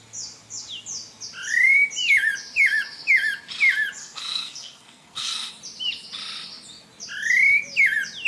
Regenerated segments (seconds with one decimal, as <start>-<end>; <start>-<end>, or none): 4.0-5.5